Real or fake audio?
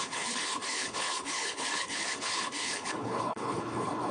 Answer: fake